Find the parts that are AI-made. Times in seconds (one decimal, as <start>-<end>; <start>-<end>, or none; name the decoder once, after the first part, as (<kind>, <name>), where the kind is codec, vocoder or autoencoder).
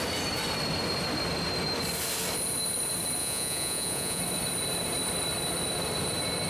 3.2-4.2 (vocoder, Vocos)